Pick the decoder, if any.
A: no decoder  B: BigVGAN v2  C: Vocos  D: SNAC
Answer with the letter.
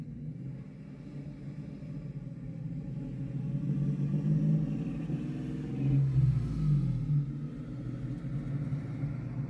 A